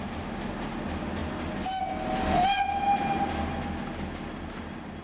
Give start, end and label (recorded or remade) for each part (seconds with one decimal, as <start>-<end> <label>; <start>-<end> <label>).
0.0-5.0 recorded